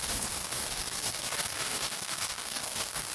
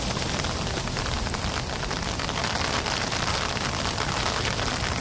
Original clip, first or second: second